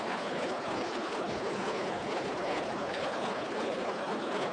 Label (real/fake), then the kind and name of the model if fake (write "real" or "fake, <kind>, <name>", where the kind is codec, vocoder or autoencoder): fake, codec, HILCodec